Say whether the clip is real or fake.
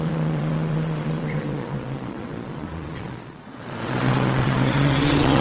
fake